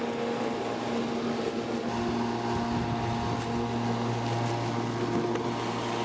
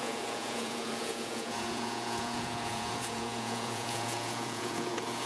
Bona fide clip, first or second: first